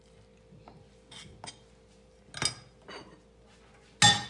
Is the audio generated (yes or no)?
no